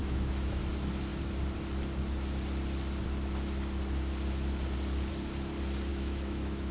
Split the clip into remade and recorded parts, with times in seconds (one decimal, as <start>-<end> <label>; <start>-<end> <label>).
0.0-0.6 remade; 0.6-5.9 recorded; 5.9-6.7 remade